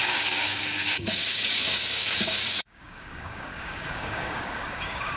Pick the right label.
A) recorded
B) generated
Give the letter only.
B